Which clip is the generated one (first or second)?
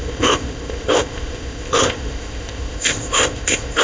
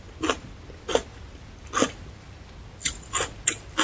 first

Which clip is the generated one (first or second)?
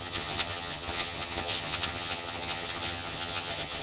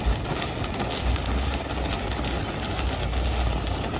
first